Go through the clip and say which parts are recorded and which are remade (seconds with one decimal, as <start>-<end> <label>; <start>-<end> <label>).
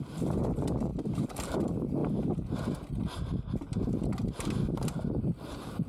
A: 0.0-5.9 recorded